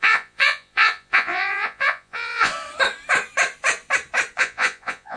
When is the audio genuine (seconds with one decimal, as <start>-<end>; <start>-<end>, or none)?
2.5-4.4